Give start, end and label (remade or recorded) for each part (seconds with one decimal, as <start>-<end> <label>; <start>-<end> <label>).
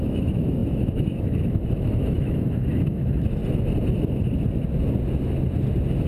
0.0-3.4 remade; 3.4-6.1 recorded